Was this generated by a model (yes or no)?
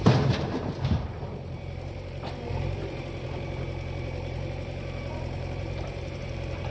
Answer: yes